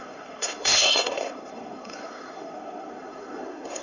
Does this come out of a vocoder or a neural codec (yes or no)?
yes